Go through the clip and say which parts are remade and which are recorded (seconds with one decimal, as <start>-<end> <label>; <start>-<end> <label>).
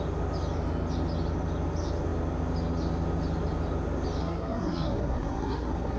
0.0-4.2 recorded; 4.2-6.0 remade